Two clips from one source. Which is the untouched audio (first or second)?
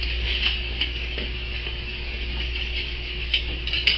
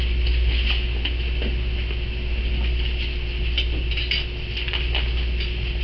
second